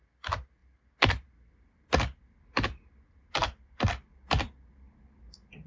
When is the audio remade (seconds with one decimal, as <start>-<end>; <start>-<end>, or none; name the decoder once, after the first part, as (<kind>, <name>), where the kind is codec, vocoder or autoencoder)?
none